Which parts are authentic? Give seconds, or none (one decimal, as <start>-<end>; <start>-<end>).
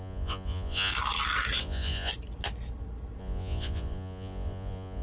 0.9-1.6; 2.1-3.2